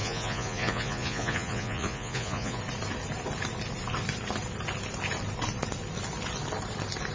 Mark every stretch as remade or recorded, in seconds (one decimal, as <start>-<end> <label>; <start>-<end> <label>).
0.0-2.6 remade; 2.6-7.1 recorded